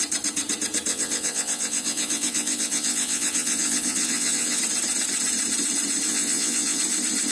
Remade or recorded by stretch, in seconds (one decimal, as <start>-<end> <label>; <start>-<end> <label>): 0.0-0.9 recorded; 0.9-4.6 remade; 4.6-6.1 recorded; 6.1-6.8 remade; 6.8-7.3 recorded